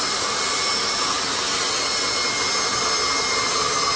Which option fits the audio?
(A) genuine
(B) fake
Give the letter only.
A